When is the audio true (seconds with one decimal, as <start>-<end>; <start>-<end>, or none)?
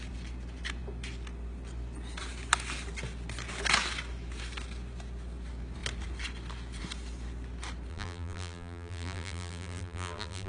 0.0-7.9